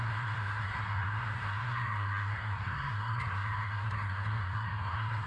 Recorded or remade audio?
remade